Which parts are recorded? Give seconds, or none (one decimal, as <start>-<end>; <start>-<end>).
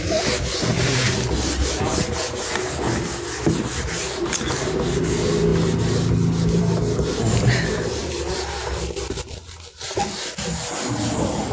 0.0-11.5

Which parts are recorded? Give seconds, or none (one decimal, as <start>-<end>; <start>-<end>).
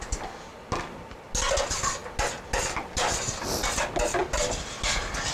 0.0-5.3